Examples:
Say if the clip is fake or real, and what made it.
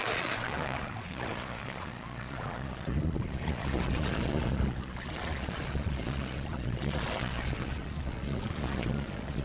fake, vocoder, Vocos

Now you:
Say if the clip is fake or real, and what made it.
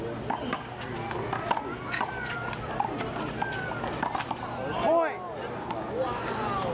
real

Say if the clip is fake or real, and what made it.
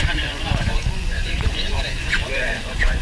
fake, vocoder, Vocos